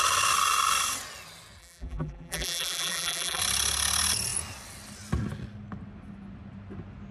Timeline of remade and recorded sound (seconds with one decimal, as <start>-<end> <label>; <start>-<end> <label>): 0.0-1.6 recorded; 1.6-3.4 remade; 3.4-7.1 recorded